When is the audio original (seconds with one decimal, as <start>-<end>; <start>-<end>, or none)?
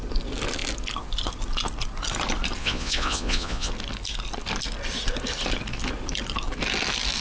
0.0-2.6; 3.7-7.2